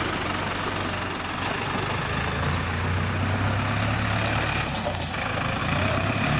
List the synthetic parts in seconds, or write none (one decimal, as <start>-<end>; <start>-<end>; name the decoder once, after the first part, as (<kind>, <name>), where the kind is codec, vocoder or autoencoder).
5.6-6.4 (vocoder, BigVGAN v2)